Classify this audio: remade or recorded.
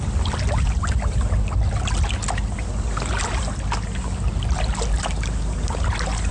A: recorded